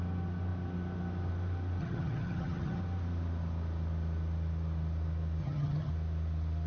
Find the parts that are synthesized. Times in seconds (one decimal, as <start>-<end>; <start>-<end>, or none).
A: 1.8-2.8; 5.4-5.9